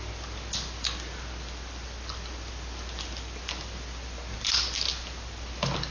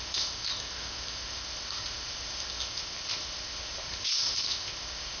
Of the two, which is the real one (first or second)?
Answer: first